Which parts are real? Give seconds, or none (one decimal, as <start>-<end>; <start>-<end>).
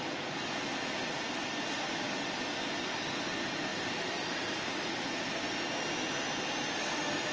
0.0-3.7; 5.3-7.3